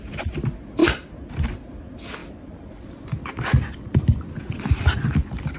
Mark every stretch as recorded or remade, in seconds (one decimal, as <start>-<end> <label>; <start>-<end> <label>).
0.0-2.2 recorded; 2.2-5.6 remade